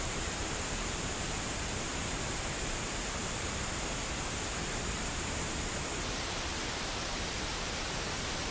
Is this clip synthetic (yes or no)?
yes